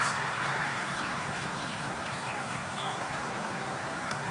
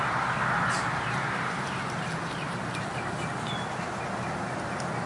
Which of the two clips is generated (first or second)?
first